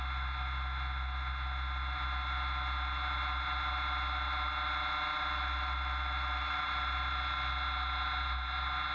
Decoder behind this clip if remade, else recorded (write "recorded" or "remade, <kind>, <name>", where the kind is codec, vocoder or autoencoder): recorded